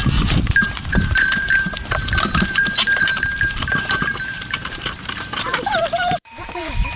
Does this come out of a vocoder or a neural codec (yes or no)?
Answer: yes